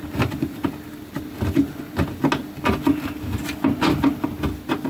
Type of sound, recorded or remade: recorded